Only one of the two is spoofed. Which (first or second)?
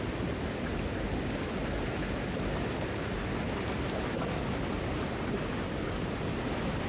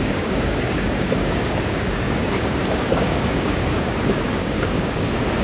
second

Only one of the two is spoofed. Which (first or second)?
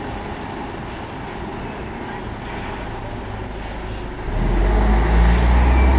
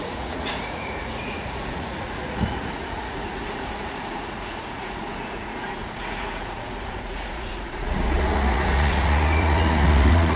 second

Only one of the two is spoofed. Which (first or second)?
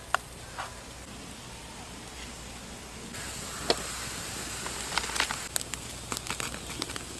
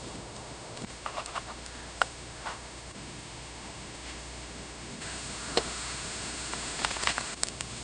second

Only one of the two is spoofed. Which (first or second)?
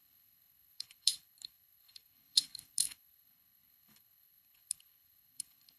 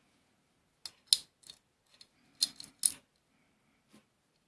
first